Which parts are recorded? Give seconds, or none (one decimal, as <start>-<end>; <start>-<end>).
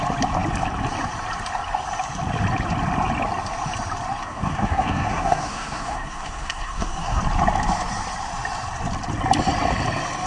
0.0-4.2; 7.2-10.3